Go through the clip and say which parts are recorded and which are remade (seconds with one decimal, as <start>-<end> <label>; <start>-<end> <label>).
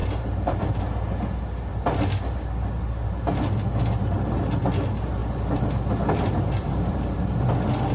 0.0-0.8 remade; 0.8-1.7 recorded; 1.7-3.8 remade; 3.8-5.2 recorded; 5.2-7.5 remade; 7.5-7.9 recorded